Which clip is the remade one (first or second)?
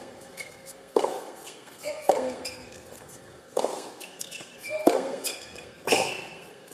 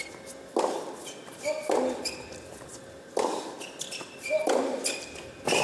first